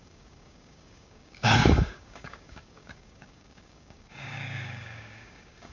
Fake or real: fake